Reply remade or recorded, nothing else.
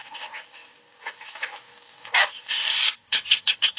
remade